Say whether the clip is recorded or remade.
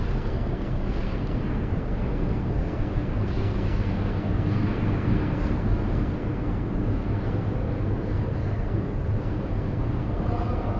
remade